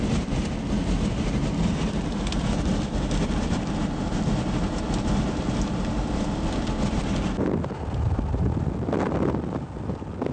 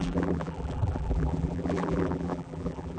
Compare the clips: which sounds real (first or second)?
first